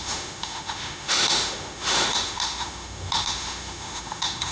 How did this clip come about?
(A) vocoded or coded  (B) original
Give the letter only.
A